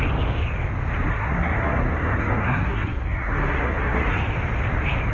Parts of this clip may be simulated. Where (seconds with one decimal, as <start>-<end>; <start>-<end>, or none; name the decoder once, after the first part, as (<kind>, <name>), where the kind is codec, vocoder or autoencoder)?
1.1-4.2 (codec, SNAC)